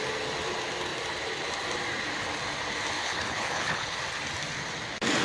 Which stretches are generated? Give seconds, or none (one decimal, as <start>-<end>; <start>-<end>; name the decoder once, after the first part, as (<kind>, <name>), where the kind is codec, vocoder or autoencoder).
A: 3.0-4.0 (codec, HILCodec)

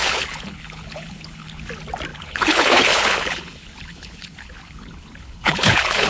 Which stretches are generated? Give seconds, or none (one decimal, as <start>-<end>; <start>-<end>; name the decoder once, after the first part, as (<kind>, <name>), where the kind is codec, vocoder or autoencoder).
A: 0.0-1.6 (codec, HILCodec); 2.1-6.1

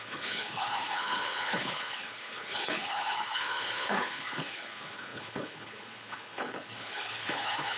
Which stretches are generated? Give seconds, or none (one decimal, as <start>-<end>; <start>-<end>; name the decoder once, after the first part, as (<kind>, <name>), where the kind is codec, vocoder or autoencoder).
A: 0.0-7.8 (codec, HILCodec)

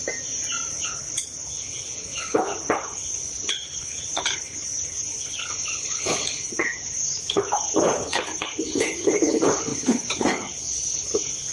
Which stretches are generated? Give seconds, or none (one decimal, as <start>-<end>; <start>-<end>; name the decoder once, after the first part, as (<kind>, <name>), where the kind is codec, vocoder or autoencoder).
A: 0.7-11.5 (codec, HILCodec)

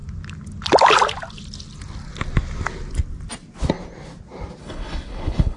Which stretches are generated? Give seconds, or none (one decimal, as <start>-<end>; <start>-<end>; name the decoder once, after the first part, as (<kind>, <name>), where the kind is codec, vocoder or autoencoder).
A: 4.6-5.6 (codec, HILCodec)

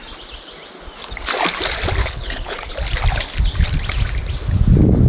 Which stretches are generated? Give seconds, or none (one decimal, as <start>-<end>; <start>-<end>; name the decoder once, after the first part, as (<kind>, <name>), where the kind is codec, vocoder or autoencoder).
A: 2.0-2.7 (codec, HILCodec)